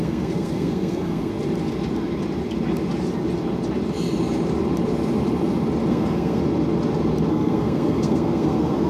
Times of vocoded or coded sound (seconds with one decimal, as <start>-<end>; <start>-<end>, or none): 0.0-1.3; 5.9-6.4; 7.3-8.9